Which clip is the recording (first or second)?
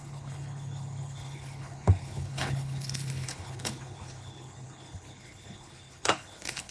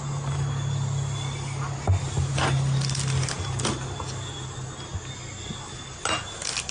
second